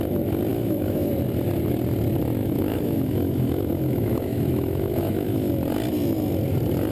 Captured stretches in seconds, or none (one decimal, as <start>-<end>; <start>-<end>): 0.0-0.5; 1.1-2.4; 5.5-6.9